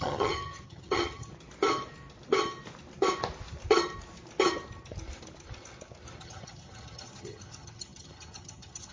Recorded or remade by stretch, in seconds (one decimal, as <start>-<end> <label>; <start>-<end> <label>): 0.0-1.3 remade; 1.3-6.2 recorded; 6.2-8.9 remade